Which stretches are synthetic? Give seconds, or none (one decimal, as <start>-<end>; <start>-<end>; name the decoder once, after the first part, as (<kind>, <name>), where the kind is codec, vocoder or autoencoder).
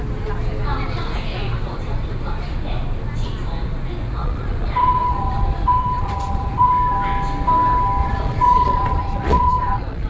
4.2-6.7 (vocoder, Vocos); 8.0-10.1